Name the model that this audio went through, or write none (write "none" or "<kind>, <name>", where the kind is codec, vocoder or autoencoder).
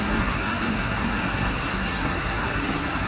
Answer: codec, SNAC